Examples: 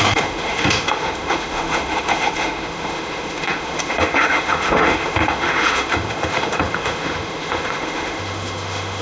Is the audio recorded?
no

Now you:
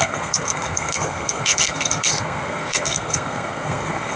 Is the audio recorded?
no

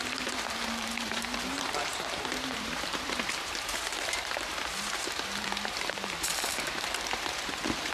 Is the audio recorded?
no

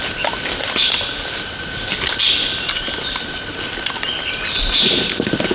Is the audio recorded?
yes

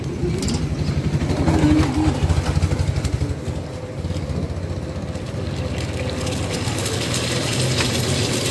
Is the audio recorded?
yes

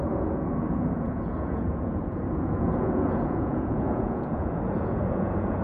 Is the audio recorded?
no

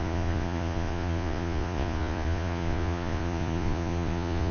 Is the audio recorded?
no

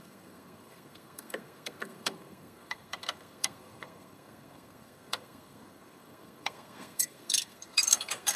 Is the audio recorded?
no